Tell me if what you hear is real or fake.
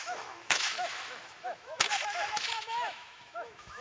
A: fake